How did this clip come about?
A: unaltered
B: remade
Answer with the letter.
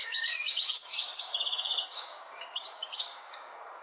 B